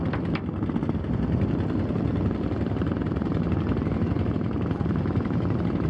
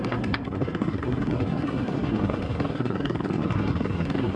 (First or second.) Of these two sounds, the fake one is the second